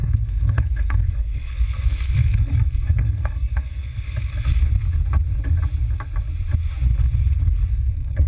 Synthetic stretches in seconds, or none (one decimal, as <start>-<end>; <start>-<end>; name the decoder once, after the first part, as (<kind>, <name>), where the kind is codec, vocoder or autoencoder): 0.0-4.6 (codec, SNAC); 7.7-8.3